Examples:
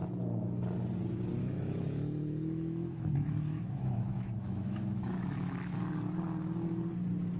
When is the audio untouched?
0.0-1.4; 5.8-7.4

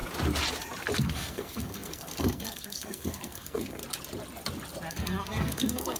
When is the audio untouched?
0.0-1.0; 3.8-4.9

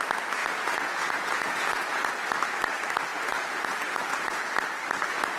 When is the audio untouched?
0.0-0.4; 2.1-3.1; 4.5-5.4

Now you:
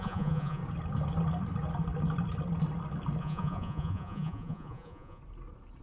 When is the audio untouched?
0.6-3.2; 5.2-5.8

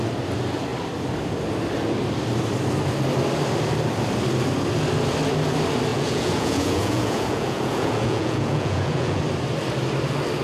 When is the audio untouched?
0.0-5.9; 9.2-10.4